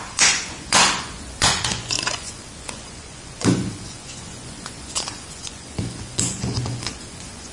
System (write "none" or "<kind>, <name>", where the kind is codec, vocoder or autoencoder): vocoder, Vocos